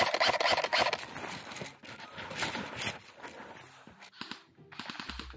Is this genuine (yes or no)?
yes